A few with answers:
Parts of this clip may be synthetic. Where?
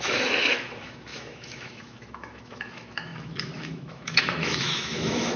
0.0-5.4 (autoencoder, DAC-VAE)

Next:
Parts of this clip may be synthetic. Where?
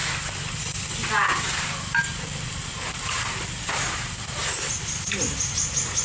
none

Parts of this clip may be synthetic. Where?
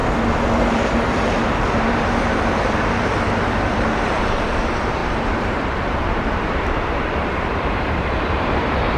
0.6-3.1 (vocoder, BigVGAN v2); 3.7-9.0